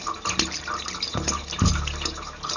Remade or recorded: recorded